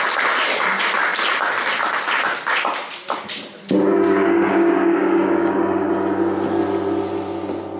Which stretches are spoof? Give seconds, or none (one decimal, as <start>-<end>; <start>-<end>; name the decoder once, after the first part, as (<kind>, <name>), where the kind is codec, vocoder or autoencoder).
3.6-5.9 (codec, DAC)